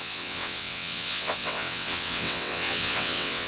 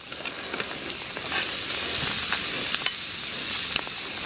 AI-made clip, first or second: first